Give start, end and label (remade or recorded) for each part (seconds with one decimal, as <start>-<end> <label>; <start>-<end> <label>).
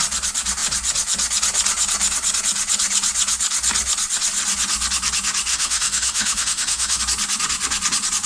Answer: 0.0-5.5 recorded; 5.5-7.0 remade; 7.0-8.2 recorded